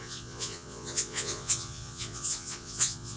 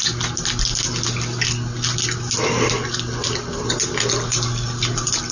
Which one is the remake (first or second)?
first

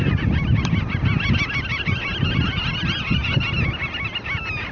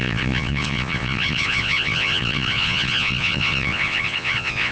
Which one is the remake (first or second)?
second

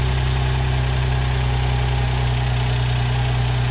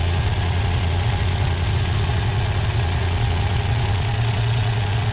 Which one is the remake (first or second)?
second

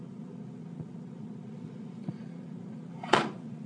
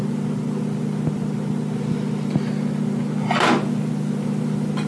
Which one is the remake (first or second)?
first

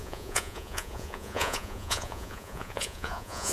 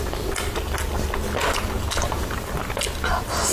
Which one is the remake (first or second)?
first